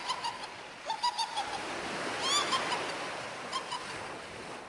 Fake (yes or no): no